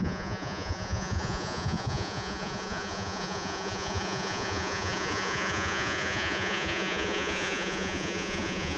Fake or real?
fake